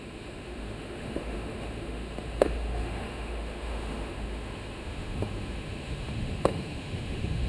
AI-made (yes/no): yes